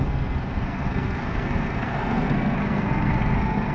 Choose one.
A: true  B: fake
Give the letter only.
B